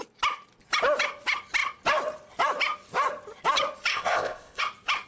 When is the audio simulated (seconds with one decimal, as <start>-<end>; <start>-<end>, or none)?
3.9-4.6